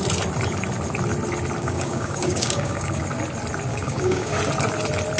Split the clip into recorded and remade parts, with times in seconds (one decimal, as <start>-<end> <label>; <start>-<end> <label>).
0.0-1.6 recorded; 1.6-3.0 remade; 3.0-3.7 recorded; 3.7-4.3 remade; 4.3-5.2 recorded